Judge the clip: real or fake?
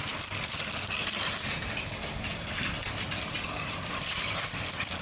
real